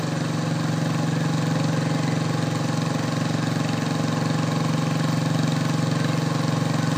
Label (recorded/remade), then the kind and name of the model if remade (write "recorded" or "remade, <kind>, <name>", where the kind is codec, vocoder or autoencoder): recorded